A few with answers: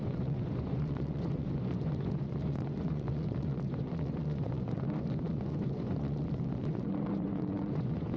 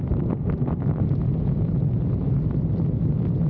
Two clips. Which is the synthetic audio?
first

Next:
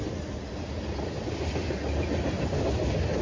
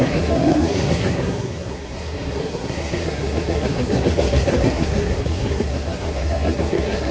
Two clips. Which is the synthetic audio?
second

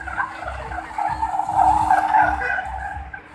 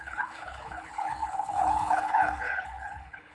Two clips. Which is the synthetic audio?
second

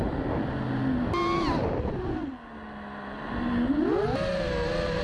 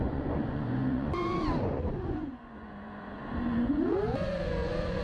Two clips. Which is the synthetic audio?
second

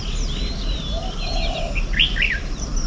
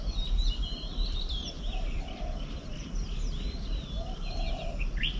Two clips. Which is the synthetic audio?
second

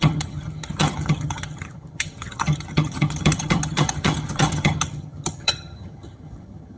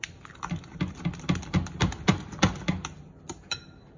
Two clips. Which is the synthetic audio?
first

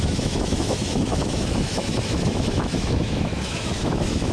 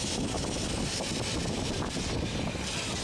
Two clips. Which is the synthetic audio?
first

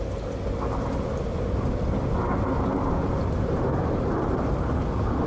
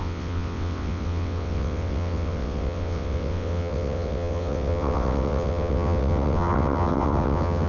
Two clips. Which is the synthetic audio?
second